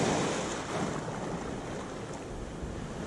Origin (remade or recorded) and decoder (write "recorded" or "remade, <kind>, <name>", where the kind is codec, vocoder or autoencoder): recorded